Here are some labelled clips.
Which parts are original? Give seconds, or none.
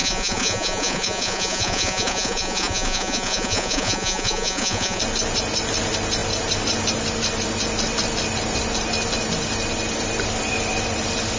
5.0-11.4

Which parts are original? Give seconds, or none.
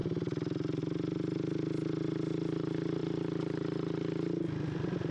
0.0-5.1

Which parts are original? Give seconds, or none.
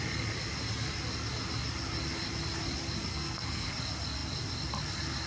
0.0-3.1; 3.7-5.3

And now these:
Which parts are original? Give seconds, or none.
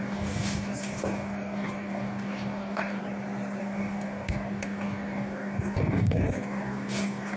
3.0-3.6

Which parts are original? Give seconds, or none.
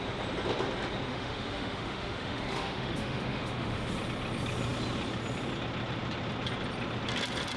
0.0-1.1; 3.9-7.6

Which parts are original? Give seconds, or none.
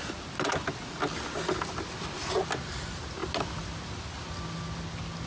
0.0-5.3